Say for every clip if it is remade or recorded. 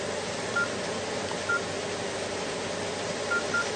recorded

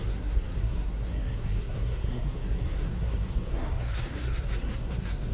remade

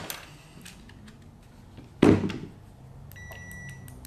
recorded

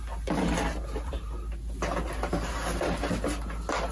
recorded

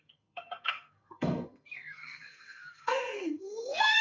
remade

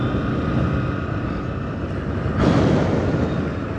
recorded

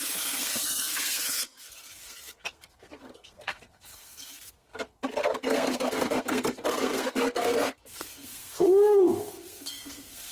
remade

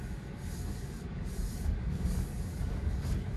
remade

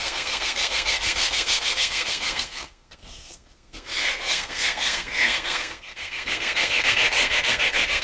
remade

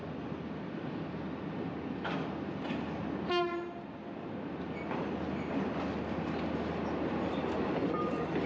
recorded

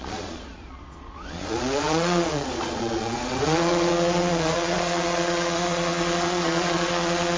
remade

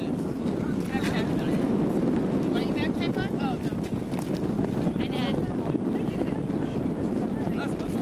recorded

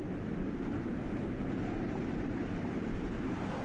recorded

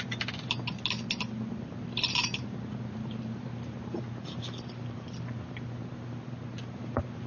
recorded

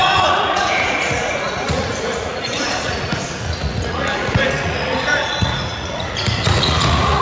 remade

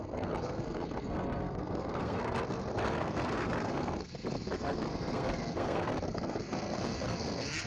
remade